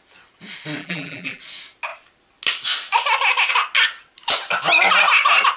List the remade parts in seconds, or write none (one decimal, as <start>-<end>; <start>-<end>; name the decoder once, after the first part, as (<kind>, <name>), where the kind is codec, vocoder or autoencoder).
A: 0.8-1.4 (vocoder, BigVGAN v2)